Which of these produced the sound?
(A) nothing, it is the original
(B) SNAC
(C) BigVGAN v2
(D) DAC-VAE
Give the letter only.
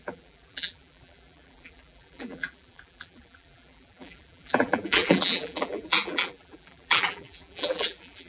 C